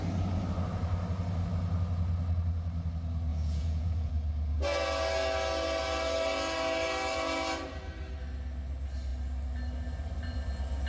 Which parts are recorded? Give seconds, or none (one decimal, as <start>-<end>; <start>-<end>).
0.0-3.3; 4.1-10.9

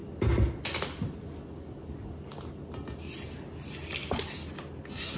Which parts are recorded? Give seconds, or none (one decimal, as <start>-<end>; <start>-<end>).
0.0-5.2

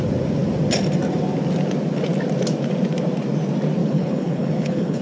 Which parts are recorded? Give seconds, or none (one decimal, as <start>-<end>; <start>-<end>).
0.0-3.8

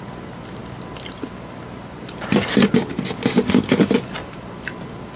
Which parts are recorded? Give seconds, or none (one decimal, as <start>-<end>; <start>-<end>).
0.0-5.2